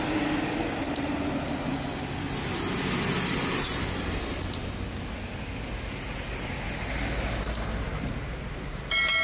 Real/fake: real